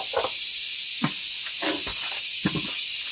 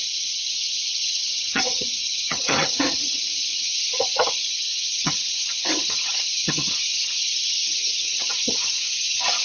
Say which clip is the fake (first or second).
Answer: second